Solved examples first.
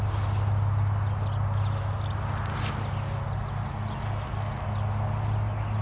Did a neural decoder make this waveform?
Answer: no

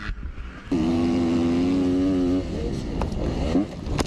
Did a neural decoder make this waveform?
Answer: no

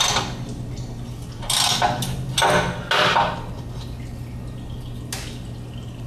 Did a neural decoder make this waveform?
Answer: no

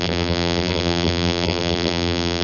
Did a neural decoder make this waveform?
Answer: yes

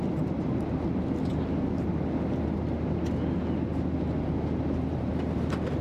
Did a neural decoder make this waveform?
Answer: no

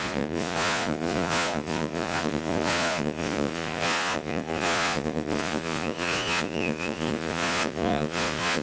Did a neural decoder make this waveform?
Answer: yes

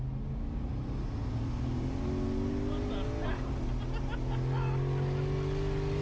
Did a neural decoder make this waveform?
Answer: no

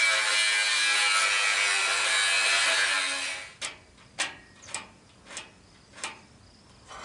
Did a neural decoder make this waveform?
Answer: no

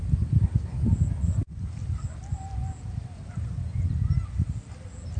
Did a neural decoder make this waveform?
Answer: no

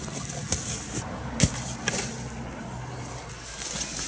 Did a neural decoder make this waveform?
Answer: no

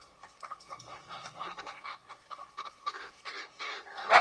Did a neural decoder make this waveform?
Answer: yes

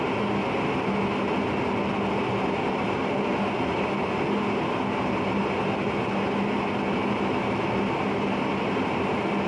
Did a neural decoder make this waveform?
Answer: no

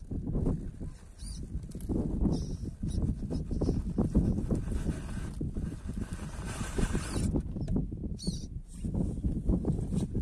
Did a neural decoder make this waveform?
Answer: no